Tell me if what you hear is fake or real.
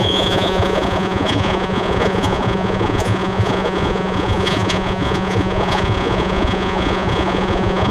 fake